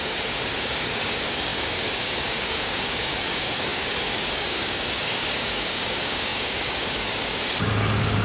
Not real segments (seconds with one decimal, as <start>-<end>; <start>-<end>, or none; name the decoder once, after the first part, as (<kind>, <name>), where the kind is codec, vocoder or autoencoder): 0.0-8.2 (codec, DAC)